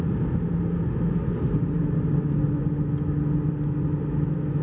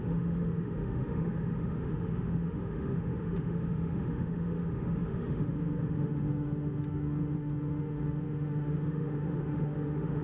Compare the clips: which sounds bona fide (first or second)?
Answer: first